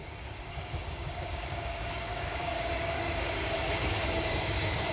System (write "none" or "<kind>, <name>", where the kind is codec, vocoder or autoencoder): codec, DAC